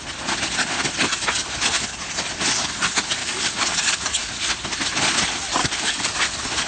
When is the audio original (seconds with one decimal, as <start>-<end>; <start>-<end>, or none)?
0.0-3.2; 4.5-5.6; 6.1-6.7